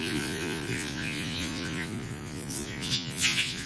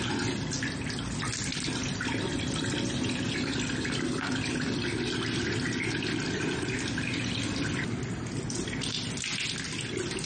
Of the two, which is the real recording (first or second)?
second